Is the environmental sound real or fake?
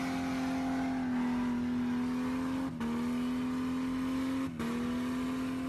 real